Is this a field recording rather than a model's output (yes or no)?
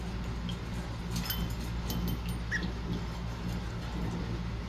yes